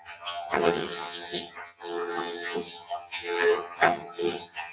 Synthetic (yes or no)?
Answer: yes